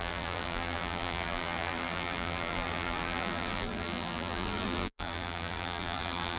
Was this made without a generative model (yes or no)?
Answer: no